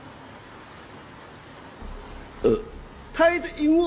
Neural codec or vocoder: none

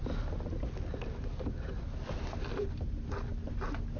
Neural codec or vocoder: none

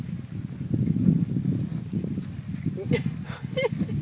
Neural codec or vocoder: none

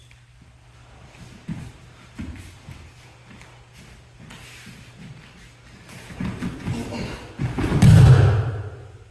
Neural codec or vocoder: none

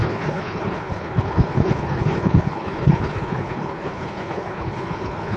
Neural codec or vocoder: codec, HILCodec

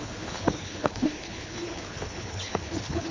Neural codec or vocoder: codec, HILCodec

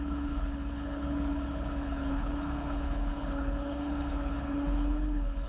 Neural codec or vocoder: codec, HILCodec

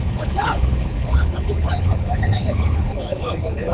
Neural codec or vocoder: codec, HILCodec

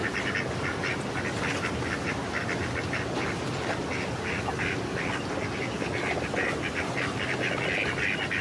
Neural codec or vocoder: none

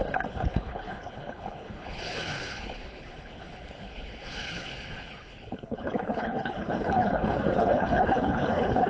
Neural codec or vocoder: codec, HILCodec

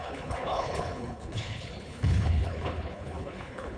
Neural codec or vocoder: codec, HILCodec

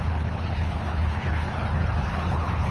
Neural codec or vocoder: codec, HILCodec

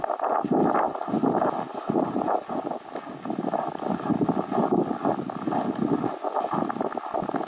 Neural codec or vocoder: none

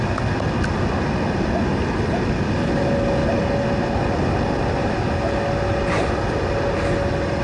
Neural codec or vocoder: none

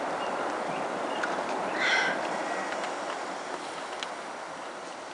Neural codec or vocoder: none